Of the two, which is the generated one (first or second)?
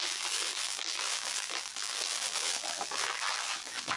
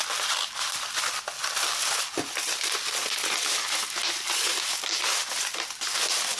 first